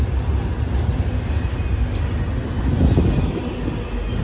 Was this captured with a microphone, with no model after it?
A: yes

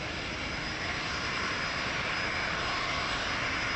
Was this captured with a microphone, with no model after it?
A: yes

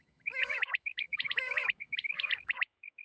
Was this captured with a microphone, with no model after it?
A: no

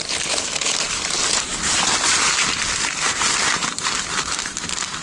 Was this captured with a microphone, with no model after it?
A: yes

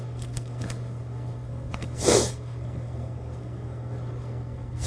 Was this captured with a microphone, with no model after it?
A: no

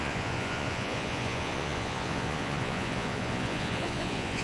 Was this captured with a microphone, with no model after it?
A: no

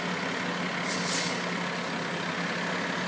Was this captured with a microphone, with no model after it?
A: yes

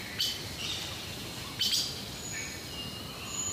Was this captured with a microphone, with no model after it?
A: yes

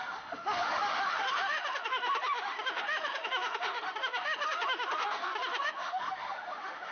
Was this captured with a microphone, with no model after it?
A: no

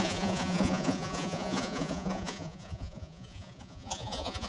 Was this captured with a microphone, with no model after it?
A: no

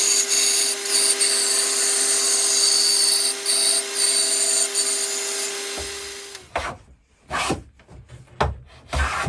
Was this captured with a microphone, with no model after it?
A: yes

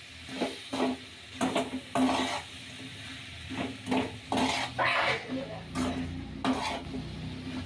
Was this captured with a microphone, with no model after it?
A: yes